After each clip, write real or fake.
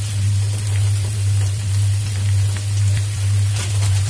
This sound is real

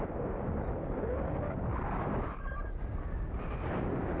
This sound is real